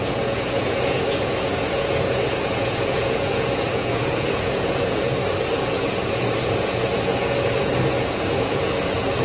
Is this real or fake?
fake